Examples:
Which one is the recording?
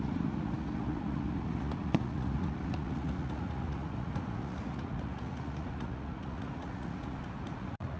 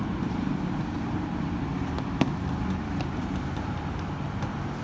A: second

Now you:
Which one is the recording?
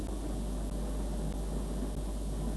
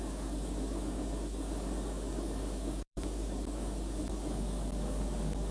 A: first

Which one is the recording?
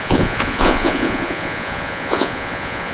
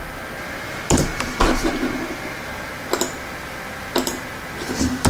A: second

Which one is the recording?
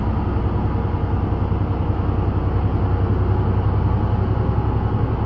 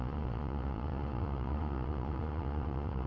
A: first